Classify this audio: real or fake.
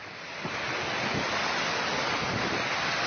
real